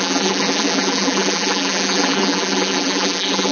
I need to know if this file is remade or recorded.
remade